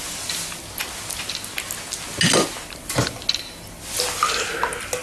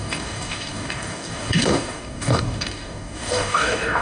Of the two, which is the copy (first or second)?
second